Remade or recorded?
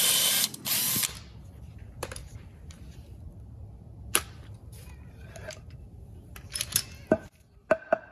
recorded